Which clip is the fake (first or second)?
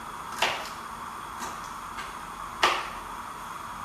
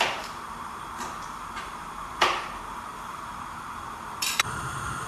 second